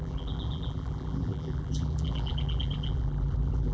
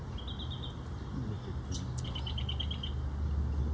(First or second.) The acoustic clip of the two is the second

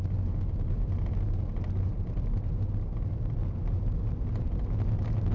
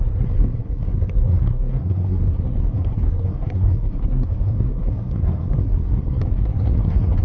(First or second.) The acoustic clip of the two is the first